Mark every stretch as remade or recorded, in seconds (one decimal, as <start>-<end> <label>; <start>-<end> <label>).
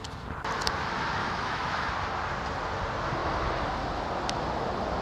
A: 0.0-1.2 recorded; 1.2-1.9 remade; 1.9-5.0 recorded